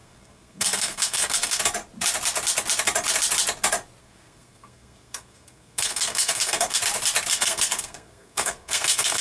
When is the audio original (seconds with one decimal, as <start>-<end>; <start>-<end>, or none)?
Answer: 1.6-4.0; 6.8-7.3